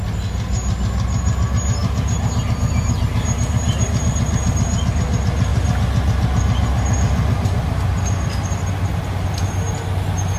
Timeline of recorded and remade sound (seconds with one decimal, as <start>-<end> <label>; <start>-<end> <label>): 0.0-10.4 recorded